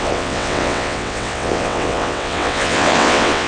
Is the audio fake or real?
fake